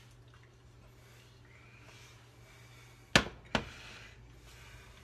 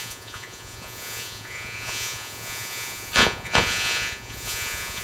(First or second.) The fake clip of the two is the second